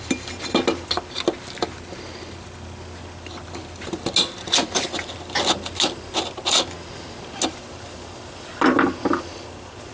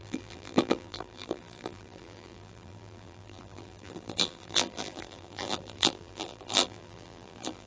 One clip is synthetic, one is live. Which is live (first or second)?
first